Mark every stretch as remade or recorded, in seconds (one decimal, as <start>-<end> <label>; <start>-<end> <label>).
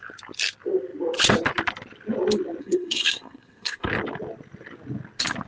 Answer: 0.0-2.6 recorded; 2.6-3.9 remade; 3.9-5.5 recorded